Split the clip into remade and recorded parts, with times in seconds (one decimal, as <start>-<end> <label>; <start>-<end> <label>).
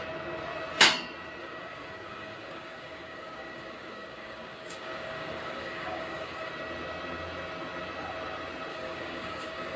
0.0-1.4 recorded; 1.4-6.5 remade; 6.5-8.7 recorded; 8.7-9.8 remade